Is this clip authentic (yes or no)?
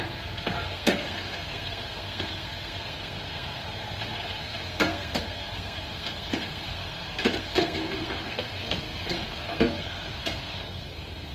no